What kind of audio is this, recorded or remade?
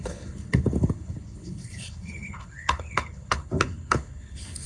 remade